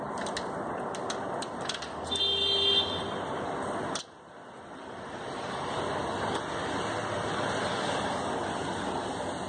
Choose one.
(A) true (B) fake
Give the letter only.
A